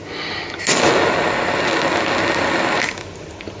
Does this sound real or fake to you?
real